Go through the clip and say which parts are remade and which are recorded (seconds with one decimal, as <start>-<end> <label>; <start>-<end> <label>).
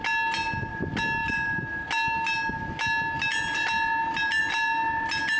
0.0-5.4 recorded